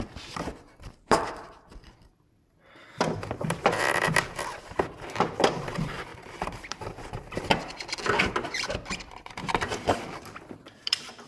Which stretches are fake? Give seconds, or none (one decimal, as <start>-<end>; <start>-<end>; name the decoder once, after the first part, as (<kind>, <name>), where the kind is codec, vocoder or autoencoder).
0.0-11.3 (vocoder, BigVGAN v2)